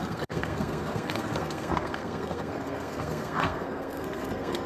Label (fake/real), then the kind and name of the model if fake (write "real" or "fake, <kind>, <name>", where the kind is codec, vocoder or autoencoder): fake, codec, SNAC